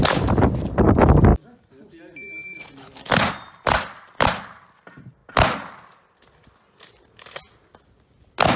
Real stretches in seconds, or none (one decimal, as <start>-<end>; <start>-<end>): 0.0-8.6